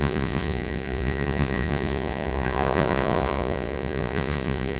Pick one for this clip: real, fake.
fake